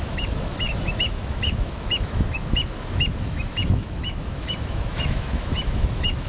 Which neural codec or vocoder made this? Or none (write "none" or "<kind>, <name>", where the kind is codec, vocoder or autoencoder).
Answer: autoencoder, DAC-VAE